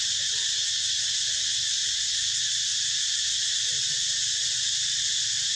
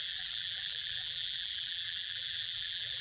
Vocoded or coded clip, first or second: second